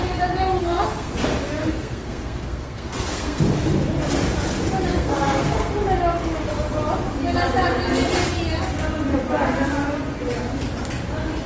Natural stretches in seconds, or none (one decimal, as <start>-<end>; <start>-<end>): 0.0-0.6; 1.1-1.6; 3.4-4.9; 5.7-11.5